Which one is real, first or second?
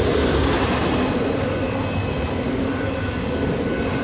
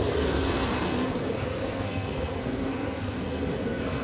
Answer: first